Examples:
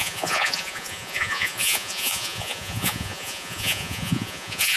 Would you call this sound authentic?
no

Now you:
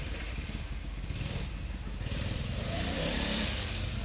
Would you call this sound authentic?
no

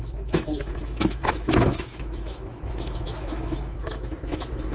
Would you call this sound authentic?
no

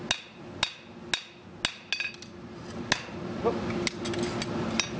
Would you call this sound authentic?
yes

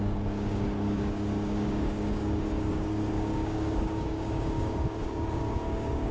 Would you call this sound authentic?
no